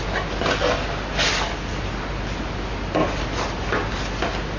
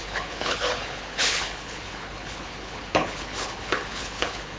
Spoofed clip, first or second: second